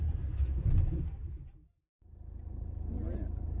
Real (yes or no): yes